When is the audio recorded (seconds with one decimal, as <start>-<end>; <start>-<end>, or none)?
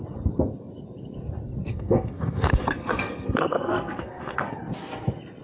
0.0-1.7; 4.5-5.4